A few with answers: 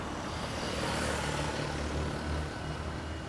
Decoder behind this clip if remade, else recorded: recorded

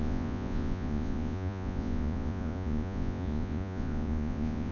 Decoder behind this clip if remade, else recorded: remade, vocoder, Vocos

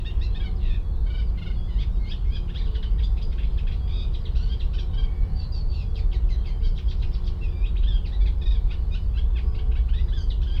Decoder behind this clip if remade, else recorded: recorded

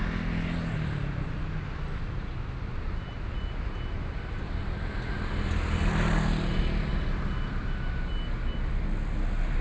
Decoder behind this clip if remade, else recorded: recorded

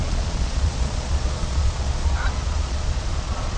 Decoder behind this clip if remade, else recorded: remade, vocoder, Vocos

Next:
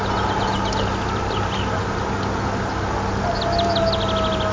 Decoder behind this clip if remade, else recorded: recorded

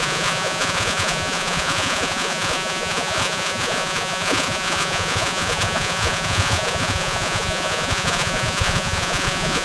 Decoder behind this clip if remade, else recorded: remade, vocoder, Vocos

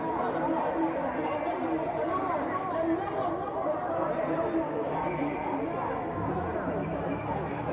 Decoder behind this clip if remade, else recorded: recorded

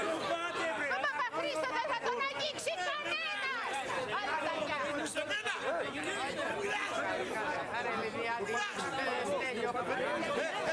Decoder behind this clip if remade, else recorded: recorded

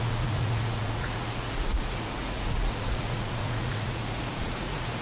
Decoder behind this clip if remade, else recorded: remade, vocoder, Vocos